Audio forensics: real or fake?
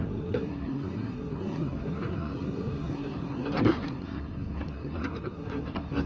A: fake